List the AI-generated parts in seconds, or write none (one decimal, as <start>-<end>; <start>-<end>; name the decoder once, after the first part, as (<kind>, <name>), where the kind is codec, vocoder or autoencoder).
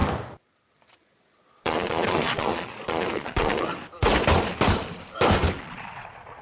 0.7-3.7 (vocoder, Vocos); 5.6-6.4